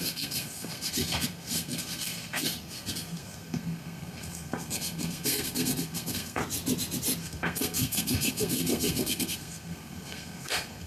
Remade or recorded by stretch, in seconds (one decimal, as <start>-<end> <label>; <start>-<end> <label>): 0.0-6.4 remade; 6.4-7.2 recorded; 7.2-10.9 remade